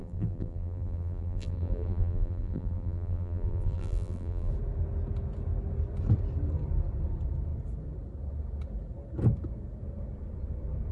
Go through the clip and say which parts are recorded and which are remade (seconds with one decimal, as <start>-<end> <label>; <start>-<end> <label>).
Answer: 0.0-4.5 remade; 4.5-10.9 recorded